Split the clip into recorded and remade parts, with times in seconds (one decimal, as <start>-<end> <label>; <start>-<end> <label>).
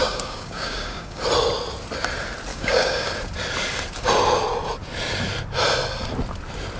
0.0-1.2 remade; 1.2-2.5 recorded; 2.5-3.1 remade; 3.1-6.8 recorded